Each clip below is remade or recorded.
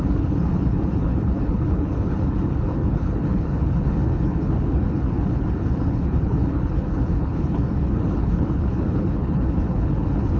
remade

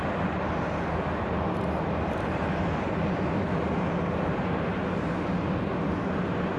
recorded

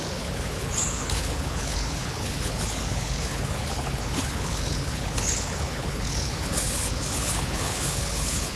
remade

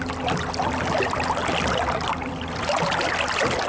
recorded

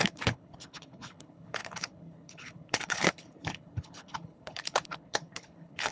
remade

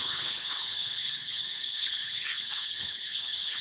remade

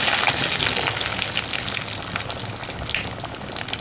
recorded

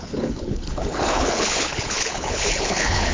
remade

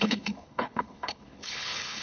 remade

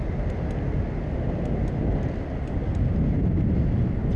recorded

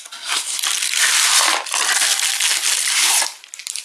recorded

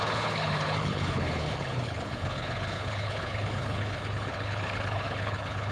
remade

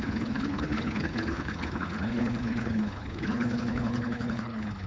remade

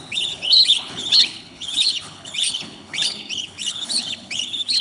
remade